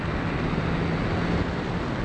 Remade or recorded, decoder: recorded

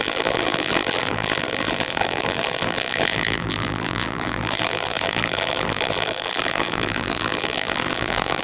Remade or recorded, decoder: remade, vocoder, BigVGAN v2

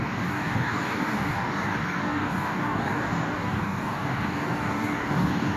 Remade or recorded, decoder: remade, codec, DAC